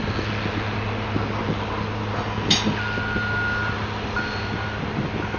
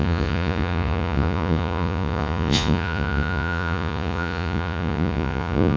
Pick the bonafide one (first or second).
first